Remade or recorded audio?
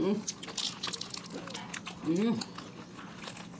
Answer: recorded